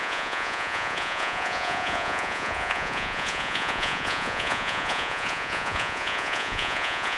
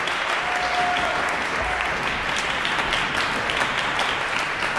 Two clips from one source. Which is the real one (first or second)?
second